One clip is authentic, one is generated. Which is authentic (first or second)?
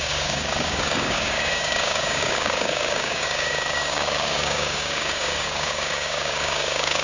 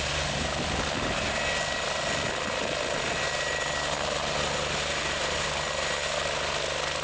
second